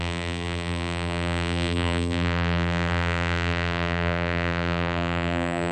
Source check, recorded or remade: remade